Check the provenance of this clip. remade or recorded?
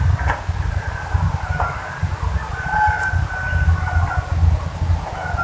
recorded